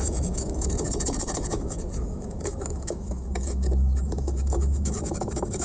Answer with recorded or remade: remade